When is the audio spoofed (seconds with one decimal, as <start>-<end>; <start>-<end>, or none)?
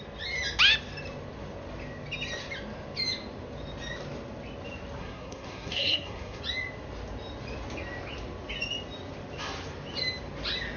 5.0-6.4